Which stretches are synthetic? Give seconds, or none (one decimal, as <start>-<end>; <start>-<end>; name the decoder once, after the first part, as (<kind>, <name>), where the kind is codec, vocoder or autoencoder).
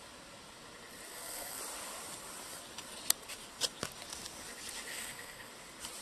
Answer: 1.1-1.6 (codec, SNAC); 4.9-5.5